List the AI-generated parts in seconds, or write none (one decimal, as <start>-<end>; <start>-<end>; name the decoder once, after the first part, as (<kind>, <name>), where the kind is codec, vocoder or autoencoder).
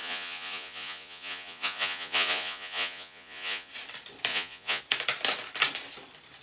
0.0-3.7 (vocoder, Vocos); 4.3-4.8